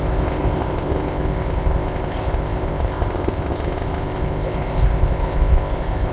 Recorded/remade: remade